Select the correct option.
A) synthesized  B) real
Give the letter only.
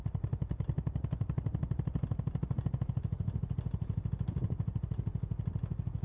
B